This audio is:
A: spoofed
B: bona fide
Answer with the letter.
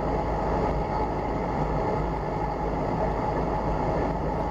B